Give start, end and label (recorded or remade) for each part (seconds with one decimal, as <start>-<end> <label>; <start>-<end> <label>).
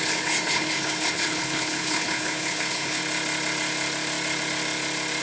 0.0-3.0 remade; 3.0-5.2 recorded